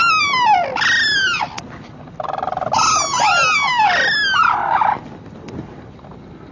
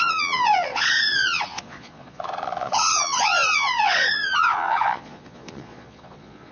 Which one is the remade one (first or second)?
second